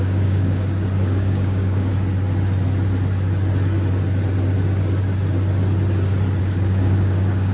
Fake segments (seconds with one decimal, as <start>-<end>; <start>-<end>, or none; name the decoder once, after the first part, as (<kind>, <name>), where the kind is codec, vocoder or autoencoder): 0.0-1.9 (codec, DAC); 6.4-7.5

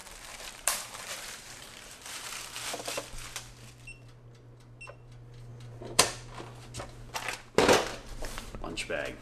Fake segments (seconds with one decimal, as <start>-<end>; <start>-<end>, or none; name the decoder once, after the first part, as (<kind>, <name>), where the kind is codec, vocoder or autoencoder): 0.0-2.3 (vocoder, BigVGAN v2); 5.5-6.0; 7.9-8.7

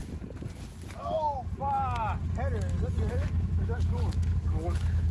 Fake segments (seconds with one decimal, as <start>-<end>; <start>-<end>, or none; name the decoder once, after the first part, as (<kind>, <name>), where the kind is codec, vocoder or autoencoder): 3.1-5.1 (autoencoder, DAC-VAE)